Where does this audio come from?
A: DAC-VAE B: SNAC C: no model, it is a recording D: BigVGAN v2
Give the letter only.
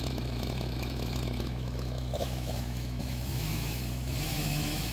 A